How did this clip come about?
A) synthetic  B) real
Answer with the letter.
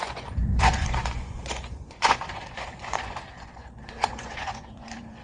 A